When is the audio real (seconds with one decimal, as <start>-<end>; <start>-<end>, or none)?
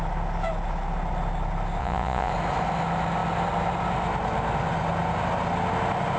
0.0-1.8; 2.3-6.2